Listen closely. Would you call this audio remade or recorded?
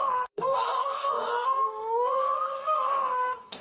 remade